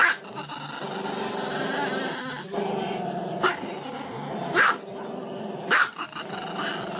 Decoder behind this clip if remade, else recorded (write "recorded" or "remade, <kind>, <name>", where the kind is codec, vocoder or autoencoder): recorded